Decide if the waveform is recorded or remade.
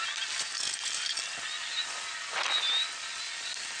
recorded